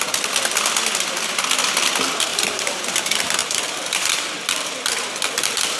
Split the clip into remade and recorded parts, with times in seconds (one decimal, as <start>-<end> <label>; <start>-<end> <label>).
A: 0.0-2.3 recorded; 2.3-2.8 remade; 2.8-3.4 recorded; 3.4-5.8 remade